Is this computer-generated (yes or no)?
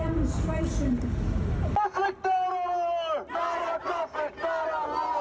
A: no